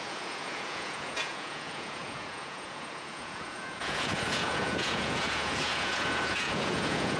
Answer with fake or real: fake